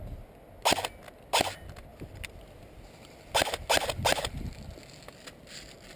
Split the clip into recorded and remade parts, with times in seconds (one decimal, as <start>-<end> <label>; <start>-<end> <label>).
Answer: 0.0-6.0 recorded

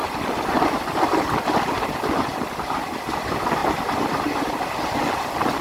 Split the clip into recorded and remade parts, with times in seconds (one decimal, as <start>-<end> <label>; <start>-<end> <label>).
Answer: 0.0-1.2 remade; 1.2-3.6 recorded; 3.6-4.5 remade; 4.5-5.6 recorded

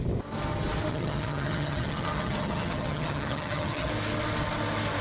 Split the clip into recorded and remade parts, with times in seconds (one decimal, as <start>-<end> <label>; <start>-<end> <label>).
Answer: 0.0-0.9 recorded; 0.9-3.9 remade; 3.9-5.0 recorded